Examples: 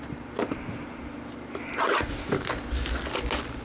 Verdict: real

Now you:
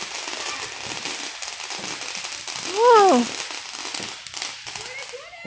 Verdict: real